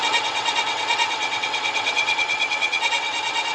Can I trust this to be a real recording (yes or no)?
no